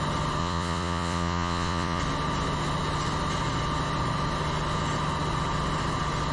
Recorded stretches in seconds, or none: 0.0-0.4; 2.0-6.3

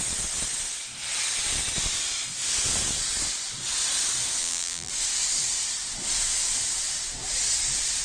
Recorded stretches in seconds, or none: 0.0-4.4; 4.9-8.0

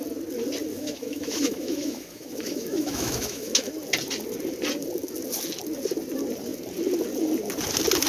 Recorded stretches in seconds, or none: 0.0-0.7; 3.7-8.1

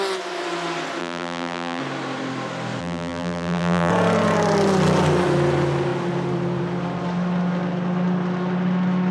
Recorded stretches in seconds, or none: 0.0-1.0; 1.8-2.8; 3.9-9.1

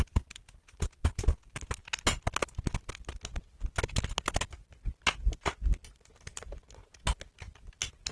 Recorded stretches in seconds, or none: 0.0-8.1